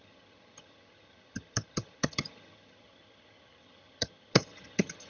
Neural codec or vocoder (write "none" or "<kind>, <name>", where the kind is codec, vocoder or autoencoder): vocoder, HiFi-GAN